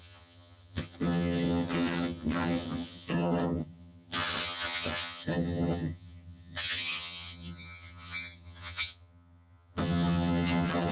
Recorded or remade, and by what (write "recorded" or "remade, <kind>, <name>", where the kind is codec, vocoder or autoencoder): remade, vocoder, HiFi-GAN